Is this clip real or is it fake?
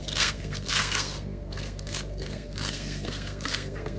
fake